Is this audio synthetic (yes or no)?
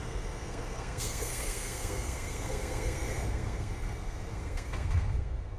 yes